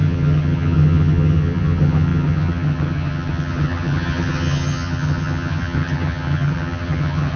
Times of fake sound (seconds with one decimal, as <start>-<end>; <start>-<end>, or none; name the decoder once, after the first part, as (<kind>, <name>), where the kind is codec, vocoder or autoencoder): 0.0-7.4 (vocoder, HiFi-GAN)